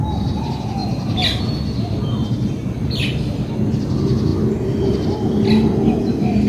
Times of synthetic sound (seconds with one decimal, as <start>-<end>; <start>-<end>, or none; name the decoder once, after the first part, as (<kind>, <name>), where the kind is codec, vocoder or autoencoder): none